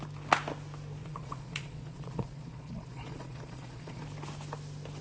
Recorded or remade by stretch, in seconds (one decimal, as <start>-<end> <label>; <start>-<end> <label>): 0.0-1.0 recorded; 1.0-4.0 remade; 4.0-5.0 recorded